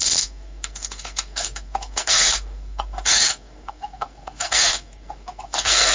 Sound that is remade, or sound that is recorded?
remade